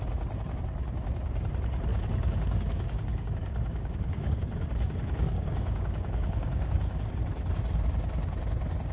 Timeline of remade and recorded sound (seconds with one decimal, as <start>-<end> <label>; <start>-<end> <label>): 0.0-1.9 recorded; 1.9-7.1 remade; 7.1-8.9 recorded